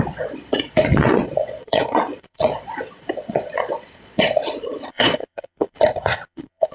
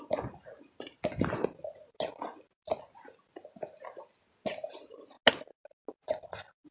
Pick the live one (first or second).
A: second